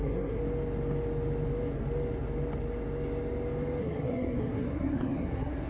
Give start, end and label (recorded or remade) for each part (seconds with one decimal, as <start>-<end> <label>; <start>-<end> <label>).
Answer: 0.0-0.4 remade; 0.4-3.8 recorded; 3.8-5.7 remade